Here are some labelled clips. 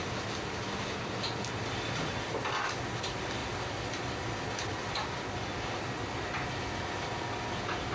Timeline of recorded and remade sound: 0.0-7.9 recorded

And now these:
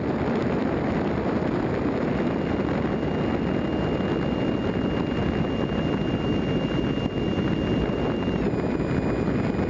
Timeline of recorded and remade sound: 0.0-9.7 recorded

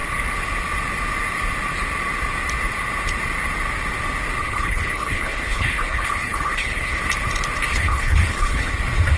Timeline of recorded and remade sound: 0.0-4.4 recorded; 4.4-7.0 remade; 7.0-7.7 recorded; 7.7-8.7 remade; 8.7-9.2 recorded

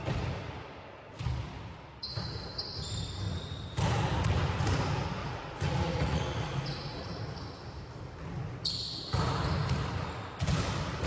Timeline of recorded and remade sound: 0.0-5.2 recorded; 5.2-7.2 remade; 7.2-11.1 recorded

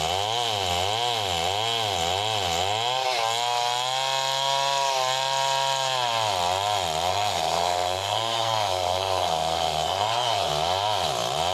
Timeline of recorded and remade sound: 0.0-7.1 recorded; 7.1-10.5 remade; 10.5-11.5 recorded

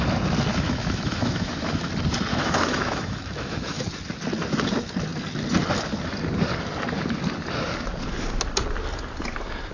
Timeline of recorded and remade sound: 0.0-0.5 recorded; 0.5-1.9 remade; 1.9-2.3 recorded; 2.3-3.8 remade; 3.8-9.7 recorded

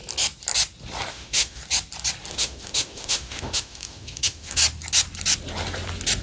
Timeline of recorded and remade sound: 0.0-1.1 recorded; 1.1-1.6 remade; 1.6-2.3 recorded; 2.3-4.6 remade; 4.6-6.2 recorded

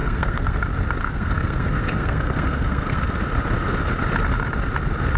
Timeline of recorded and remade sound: 0.0-0.6 remade; 0.6-1.0 recorded; 1.0-3.0 remade; 3.0-5.2 recorded